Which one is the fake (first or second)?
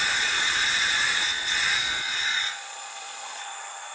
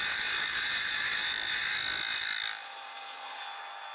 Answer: first